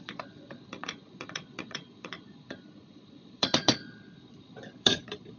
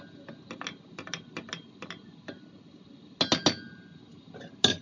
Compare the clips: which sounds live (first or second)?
second